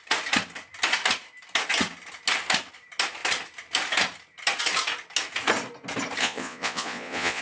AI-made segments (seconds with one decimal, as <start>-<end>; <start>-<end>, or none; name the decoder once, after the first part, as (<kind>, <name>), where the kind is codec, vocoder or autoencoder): 6.2-7.4 (vocoder, Vocos)